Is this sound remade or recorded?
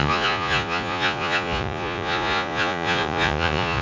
remade